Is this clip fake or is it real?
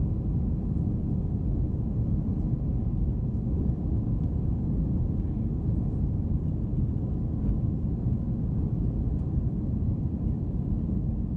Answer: real